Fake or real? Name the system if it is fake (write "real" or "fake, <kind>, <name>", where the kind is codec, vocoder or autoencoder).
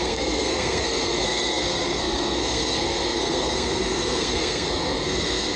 fake, codec, SNAC